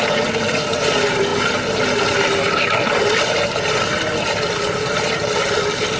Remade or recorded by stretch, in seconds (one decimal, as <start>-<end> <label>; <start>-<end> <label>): 0.0-6.0 recorded